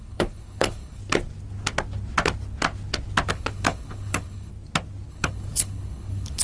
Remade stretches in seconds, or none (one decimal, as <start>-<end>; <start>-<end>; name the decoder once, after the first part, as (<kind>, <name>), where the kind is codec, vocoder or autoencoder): 0.0-1.0 (codec, HILCodec); 3.3-4.5; 5.1-6.4